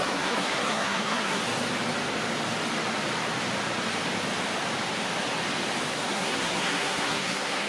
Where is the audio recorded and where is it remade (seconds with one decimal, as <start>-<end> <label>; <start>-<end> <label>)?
0.0-1.4 remade; 1.4-5.9 recorded; 5.9-7.7 remade